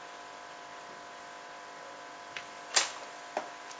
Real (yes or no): yes